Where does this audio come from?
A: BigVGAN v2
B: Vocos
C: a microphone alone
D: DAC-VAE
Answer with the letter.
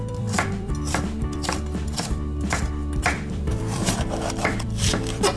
A